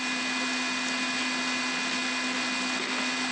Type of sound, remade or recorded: recorded